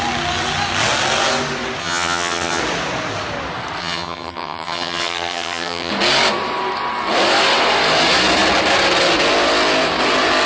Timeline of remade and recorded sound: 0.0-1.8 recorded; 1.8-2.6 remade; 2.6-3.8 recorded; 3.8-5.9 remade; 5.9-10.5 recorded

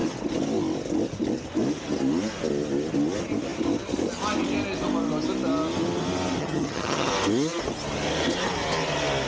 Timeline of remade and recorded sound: 0.0-6.4 recorded; 6.4-7.1 remade; 7.1-9.3 recorded

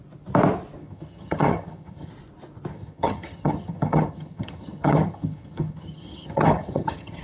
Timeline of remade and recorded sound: 0.0-0.8 recorded; 0.8-2.1 remade; 2.1-2.7 recorded; 2.7-7.2 remade

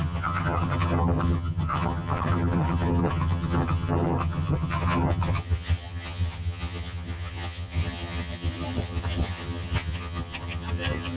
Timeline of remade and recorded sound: 0.0-11.2 remade